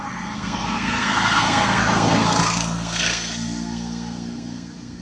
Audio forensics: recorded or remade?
remade